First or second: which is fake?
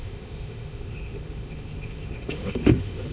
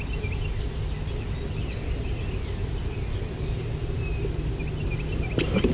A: first